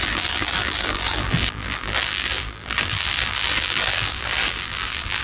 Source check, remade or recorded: remade